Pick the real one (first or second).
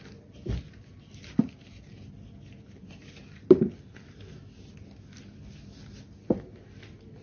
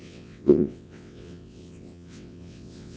first